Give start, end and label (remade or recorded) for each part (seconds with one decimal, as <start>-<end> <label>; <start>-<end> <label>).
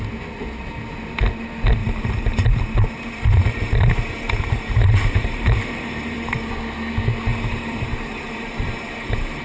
0.0-1.8 recorded; 1.8-6.5 remade; 6.5-7.3 recorded; 7.3-9.4 remade